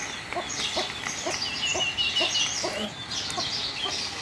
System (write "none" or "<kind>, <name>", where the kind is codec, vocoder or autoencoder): none